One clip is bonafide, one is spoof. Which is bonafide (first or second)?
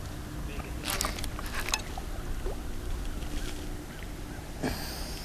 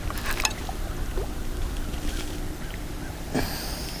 first